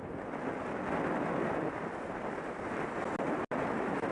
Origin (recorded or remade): recorded